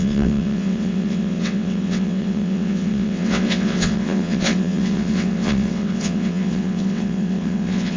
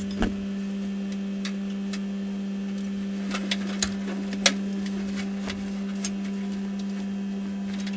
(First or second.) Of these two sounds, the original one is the second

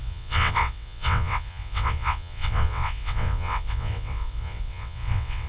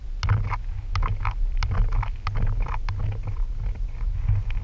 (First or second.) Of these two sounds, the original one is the second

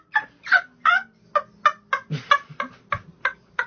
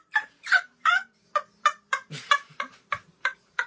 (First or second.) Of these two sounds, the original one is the first